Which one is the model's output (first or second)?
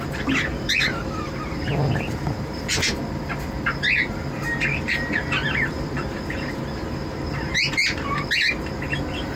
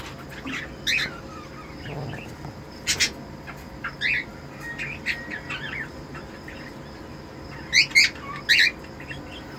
first